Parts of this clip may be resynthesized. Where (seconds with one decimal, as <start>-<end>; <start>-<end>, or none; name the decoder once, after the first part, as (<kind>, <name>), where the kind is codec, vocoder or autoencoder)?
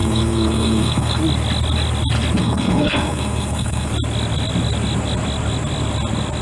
0.0-1.2 (codec, SNAC); 2.4-3.9